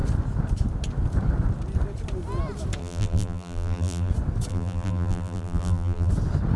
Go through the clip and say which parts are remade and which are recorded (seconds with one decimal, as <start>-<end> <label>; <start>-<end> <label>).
0.0-2.8 recorded; 2.8-4.1 remade; 4.1-4.5 recorded; 4.5-6.1 remade; 6.1-6.6 recorded